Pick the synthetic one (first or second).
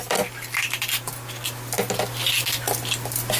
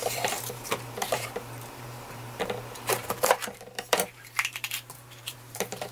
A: second